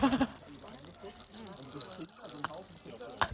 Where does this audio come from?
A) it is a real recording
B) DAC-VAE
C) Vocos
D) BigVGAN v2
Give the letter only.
A